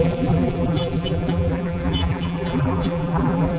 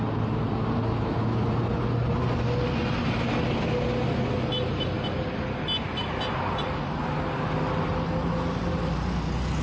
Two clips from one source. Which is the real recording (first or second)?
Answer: second